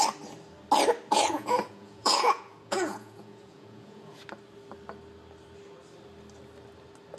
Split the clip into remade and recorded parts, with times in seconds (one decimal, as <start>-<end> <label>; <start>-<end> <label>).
0.0-1.1 recorded; 1.1-4.2 remade; 4.2-7.2 recorded